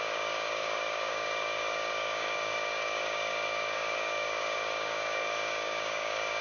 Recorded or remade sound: remade